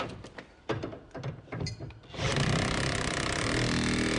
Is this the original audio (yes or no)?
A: yes